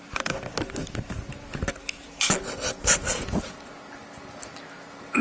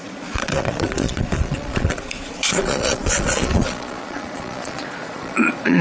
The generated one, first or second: second